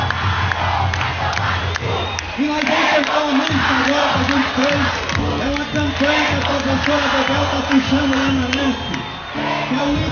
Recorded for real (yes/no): yes